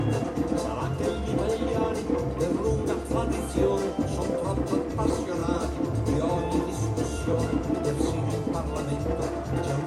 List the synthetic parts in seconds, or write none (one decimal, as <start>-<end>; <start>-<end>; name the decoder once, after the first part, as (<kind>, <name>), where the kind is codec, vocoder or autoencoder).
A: 0.0-2.5 (vocoder, BigVGAN v2); 4.0-9.9